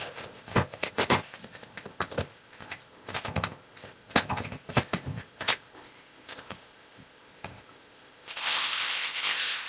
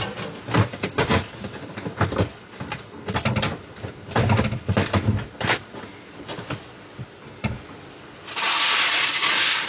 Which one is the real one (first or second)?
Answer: second